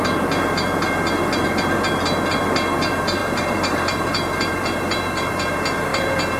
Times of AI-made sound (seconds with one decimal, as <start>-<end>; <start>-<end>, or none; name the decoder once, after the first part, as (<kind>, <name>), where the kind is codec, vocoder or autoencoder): 3.2-5.3 (vocoder, BigVGAN v2)